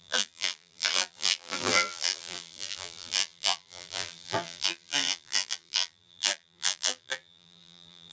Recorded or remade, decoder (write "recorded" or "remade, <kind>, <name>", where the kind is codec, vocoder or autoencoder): remade, vocoder, BigVGAN v2